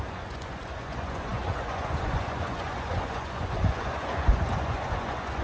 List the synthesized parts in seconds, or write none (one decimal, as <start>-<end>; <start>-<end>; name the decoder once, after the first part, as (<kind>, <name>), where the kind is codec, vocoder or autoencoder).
0.0-5.4 (vocoder, Vocos)